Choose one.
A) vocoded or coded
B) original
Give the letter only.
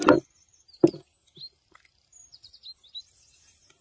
B